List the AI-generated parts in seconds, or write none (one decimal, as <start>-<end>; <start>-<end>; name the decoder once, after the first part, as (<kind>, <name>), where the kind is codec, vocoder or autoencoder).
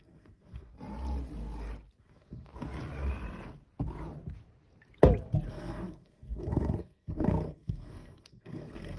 0.0-0.7 (codec, SNAC); 2.0-2.5; 5.5-9.0